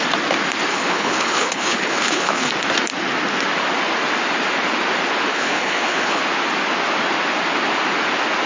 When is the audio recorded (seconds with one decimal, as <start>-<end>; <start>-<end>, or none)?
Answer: 0.0-0.7; 2.5-5.3; 6.2-8.5